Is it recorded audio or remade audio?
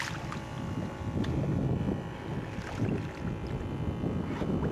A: recorded